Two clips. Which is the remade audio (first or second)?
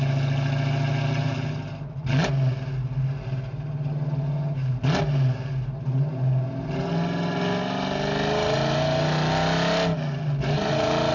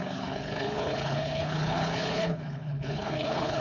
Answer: second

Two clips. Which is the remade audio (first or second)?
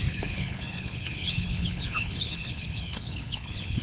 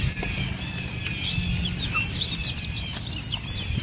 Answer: first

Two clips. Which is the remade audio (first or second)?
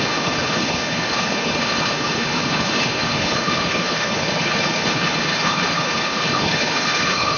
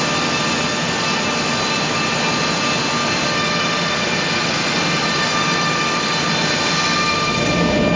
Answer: first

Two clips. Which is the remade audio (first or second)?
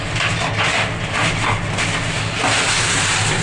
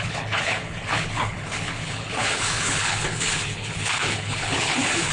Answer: second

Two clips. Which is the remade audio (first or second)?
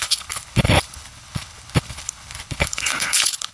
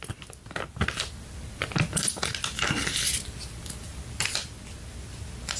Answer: first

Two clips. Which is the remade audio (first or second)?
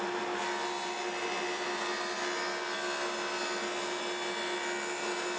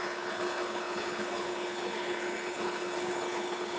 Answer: second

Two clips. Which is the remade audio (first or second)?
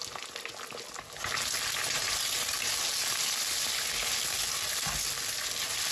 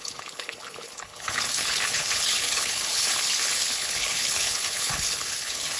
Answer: second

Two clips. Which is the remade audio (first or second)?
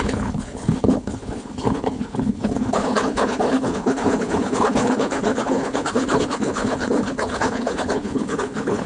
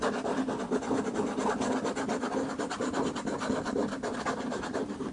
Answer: first